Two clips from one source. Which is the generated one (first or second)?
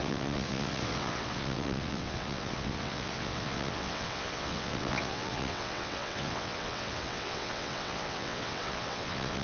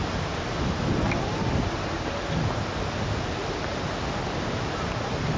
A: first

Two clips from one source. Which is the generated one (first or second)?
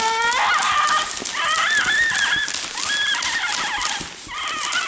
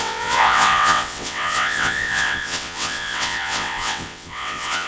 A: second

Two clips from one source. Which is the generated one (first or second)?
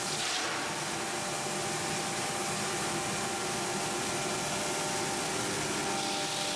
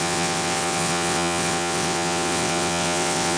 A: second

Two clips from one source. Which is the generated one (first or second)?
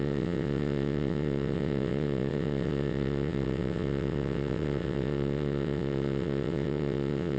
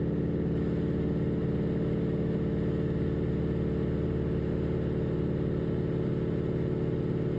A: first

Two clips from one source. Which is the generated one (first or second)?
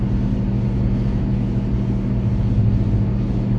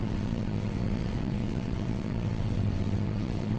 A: second